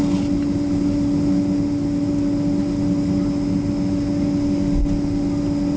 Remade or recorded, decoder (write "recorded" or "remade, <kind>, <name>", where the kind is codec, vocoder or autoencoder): recorded